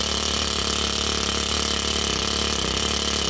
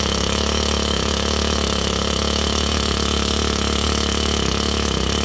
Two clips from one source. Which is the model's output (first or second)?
second